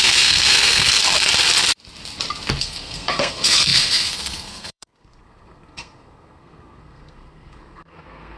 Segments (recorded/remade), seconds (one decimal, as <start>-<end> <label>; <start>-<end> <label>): 0.0-1.0 remade; 1.0-2.6 recorded; 2.6-8.4 remade